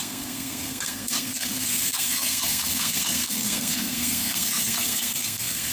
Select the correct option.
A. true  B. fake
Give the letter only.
B